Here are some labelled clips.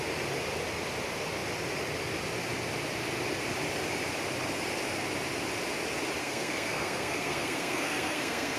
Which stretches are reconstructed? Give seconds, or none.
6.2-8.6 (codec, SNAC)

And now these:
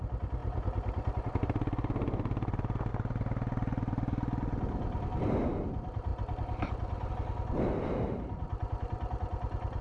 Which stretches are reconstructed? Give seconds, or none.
none

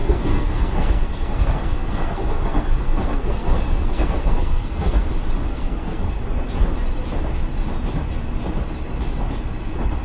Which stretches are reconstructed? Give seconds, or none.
0.0-5.1 (codec, SNAC); 5.5-6.1

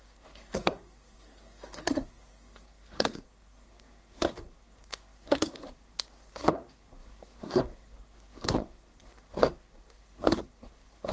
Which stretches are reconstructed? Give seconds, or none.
0.0-11.1 (codec, SNAC)

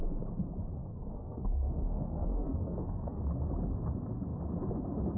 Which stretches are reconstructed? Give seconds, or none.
0.8-3.2 (codec, SNAC)

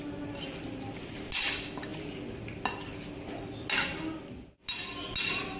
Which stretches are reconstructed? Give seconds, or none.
none

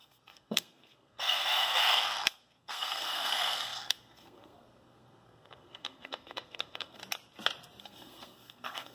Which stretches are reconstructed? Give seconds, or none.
0.0-7.0 (codec, SNAC); 7.8-8.9

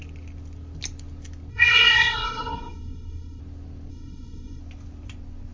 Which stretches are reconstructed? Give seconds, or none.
1.5-3.4 (codec, SNAC); 3.9-4.6